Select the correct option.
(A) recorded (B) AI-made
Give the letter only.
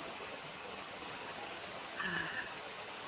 B